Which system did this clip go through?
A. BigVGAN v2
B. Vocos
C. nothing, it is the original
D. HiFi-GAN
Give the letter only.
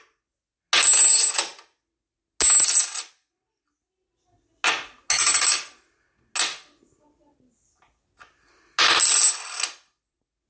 C